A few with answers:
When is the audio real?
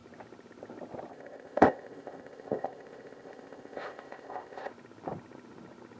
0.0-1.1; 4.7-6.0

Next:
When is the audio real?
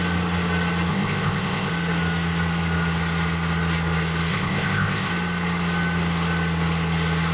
0.0-0.9; 1.7-4.3; 5.1-7.3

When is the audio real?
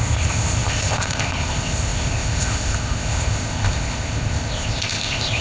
none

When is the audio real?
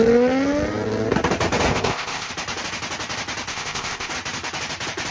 0.0-1.7; 2.3-3.5; 4.1-5.1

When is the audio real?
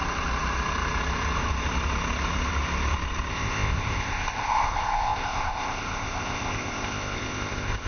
0.0-3.3